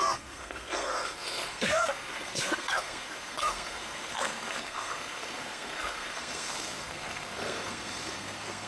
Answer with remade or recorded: remade